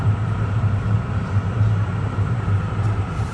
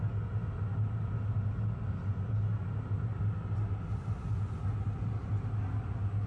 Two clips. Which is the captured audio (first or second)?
second